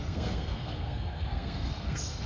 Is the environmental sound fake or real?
fake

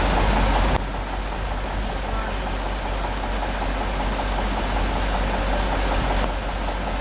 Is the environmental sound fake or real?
real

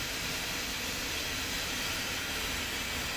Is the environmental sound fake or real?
real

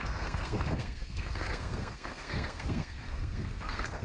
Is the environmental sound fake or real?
fake